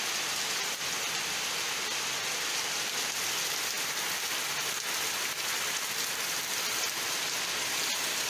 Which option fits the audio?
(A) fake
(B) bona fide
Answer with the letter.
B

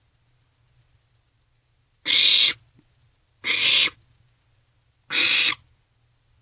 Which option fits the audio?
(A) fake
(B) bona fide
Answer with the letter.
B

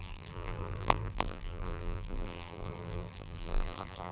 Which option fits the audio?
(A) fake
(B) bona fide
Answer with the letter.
A